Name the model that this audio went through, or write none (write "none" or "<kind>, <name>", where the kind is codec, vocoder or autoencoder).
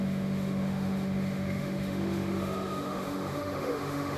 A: autoencoder, DAC-VAE